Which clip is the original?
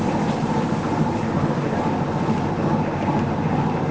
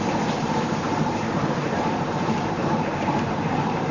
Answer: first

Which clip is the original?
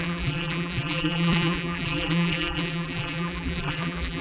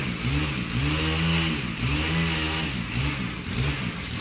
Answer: second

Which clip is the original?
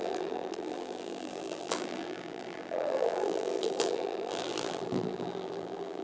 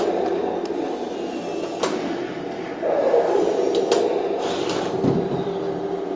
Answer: second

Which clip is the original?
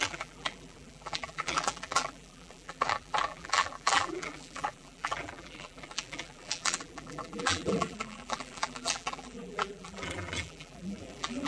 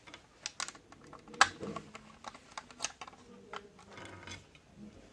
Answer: second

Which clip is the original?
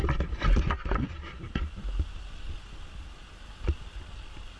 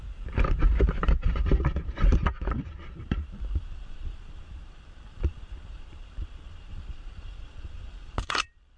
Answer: first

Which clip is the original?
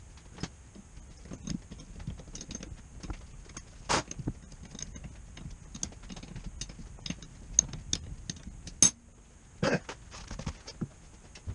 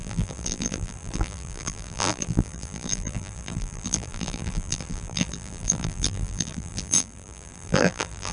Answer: first